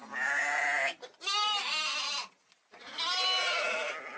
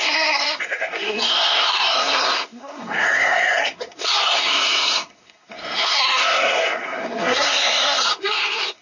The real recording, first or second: first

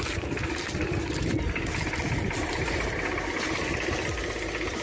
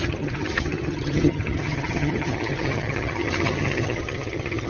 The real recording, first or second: first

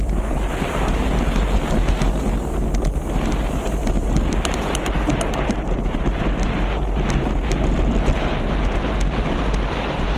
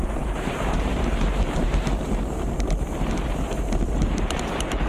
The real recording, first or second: first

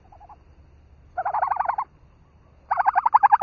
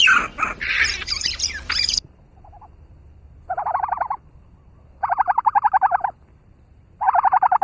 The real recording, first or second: first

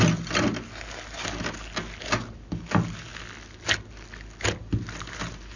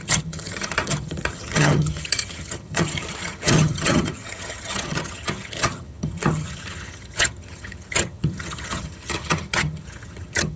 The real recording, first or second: first